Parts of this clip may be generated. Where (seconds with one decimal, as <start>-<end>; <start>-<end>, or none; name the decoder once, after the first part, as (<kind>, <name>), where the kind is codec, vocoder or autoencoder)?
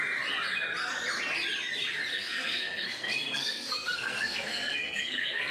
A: 2.1-5.5 (codec, SNAC)